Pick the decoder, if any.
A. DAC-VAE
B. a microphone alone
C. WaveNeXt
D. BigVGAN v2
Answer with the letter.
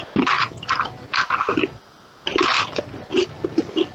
B